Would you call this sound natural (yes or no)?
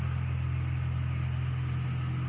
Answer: yes